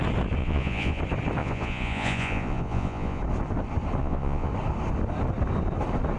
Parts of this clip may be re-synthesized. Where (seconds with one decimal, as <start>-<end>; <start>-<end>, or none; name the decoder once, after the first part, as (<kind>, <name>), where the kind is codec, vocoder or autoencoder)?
0.4-1.0 (vocoder, Vocos); 1.4-3.2; 4.0-4.5

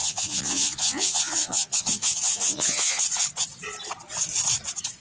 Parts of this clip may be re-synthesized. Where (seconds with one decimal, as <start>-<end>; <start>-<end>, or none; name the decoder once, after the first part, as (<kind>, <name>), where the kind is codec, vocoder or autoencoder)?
0.0-3.0 (vocoder, Vocos)

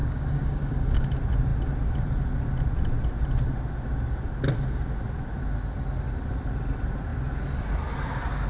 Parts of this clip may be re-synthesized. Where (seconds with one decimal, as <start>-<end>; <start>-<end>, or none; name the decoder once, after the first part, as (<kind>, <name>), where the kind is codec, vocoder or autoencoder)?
0.0-1.1 (codec, DAC)

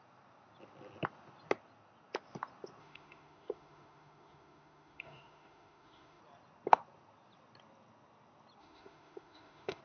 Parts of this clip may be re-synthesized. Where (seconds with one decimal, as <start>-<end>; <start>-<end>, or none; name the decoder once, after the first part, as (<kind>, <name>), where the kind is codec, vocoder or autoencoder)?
2.8-6.2 (autoencoder, DAC-VAE); 8.6-9.8

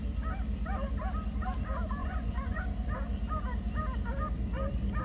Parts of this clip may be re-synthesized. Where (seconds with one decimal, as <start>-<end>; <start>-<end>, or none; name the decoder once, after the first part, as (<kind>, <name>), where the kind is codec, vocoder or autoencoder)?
2.0-2.6 (vocoder, Vocos)

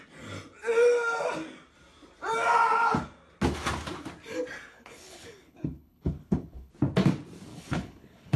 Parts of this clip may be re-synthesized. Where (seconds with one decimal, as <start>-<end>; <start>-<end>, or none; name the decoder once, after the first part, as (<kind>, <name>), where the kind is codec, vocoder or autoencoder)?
4.7-6.7 (codec, HILCodec); 7.5-8.4

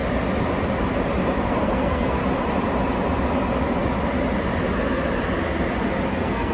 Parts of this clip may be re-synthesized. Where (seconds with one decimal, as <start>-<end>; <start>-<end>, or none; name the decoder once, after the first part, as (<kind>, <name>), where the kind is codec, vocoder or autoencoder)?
1.4-2.2 (codec, SNAC); 6.1-6.5

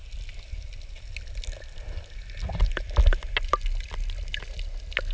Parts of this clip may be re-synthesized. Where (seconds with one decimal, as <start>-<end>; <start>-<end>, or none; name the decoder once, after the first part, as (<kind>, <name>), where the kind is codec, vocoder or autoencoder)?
none